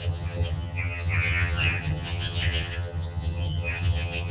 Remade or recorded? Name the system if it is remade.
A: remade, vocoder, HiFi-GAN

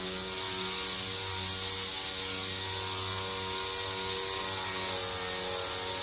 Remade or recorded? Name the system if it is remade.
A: recorded